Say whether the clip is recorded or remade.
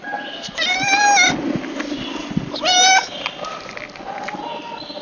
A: recorded